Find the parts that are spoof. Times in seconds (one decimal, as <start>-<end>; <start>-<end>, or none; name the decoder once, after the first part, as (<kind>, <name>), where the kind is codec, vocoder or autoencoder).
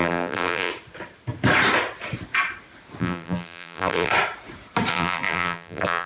0.0-0.7 (vocoder, BigVGAN v2); 3.0-4.1; 4.9-6.1